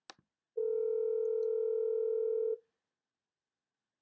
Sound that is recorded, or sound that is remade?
recorded